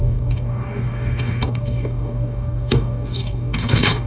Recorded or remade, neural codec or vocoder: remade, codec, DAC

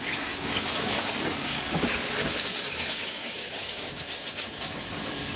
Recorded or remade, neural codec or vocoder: remade, codec, DAC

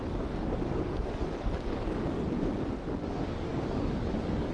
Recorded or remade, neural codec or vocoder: remade, codec, DAC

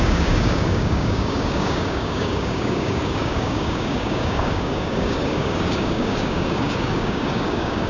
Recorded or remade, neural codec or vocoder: remade, codec, DAC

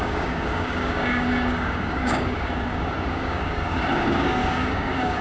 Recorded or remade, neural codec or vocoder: remade, codec, DAC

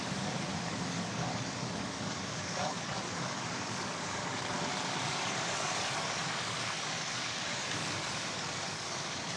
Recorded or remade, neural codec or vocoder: remade, codec, DAC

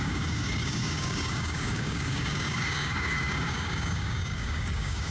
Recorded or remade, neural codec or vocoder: remade, codec, DAC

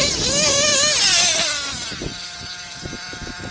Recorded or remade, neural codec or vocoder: recorded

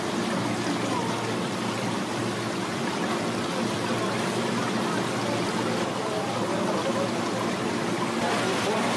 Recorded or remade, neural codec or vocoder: recorded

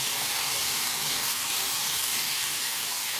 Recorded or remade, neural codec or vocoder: remade, codec, DAC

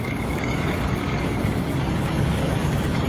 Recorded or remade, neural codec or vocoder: remade, codec, DAC